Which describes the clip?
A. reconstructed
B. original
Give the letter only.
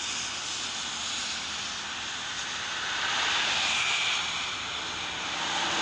B